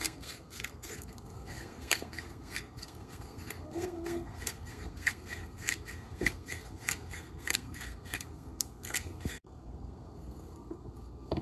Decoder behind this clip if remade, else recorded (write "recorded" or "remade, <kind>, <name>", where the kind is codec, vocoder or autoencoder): remade, codec, SNAC